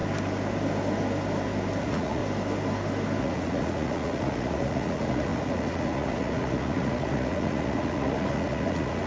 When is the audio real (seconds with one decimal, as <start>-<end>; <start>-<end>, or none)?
0.0-1.8; 2.2-3.2